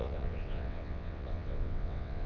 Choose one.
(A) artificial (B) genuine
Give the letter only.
A